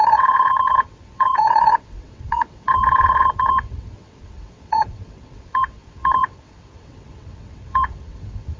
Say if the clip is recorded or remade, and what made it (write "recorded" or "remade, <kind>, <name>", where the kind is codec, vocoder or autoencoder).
remade, vocoder, WaveNeXt